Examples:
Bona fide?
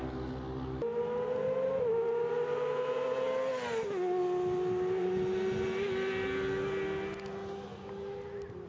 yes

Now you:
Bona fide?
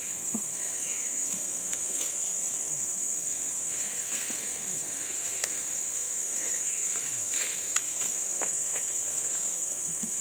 no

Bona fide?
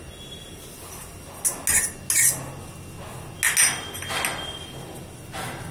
yes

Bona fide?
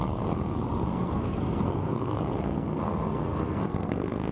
no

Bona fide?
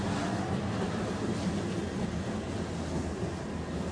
yes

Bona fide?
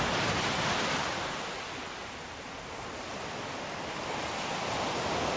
yes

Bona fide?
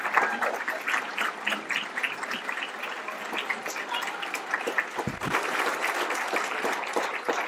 yes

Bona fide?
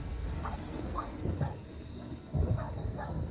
no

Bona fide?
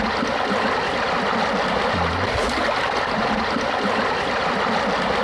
yes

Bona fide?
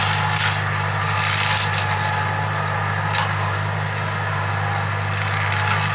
yes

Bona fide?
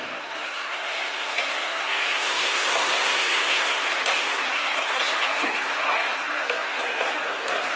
no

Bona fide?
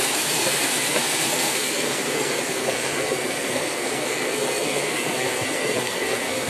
no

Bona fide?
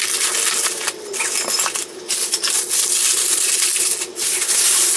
yes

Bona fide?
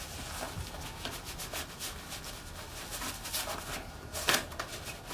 yes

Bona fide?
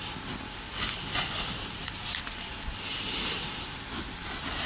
yes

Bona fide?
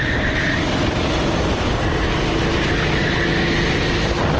yes